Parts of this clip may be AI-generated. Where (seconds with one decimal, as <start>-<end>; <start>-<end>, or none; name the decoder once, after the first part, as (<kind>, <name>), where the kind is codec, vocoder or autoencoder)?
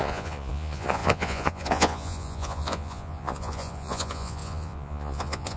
0.0-5.6 (vocoder, Vocos)